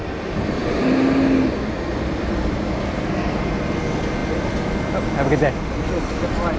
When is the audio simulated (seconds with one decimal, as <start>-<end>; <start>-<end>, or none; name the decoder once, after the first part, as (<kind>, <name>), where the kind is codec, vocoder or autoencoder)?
2.8-3.4 (codec, SNAC)